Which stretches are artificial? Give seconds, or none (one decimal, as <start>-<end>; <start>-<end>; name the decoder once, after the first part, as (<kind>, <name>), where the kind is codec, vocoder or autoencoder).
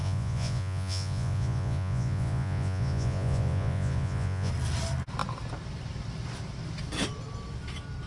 0.0-4.5 (vocoder, Vocos)